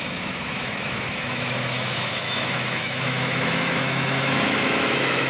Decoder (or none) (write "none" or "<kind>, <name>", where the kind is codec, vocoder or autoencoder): autoencoder, DAC-VAE